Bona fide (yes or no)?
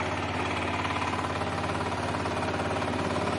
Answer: yes